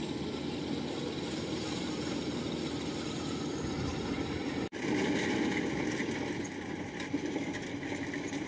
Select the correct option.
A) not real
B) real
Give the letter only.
B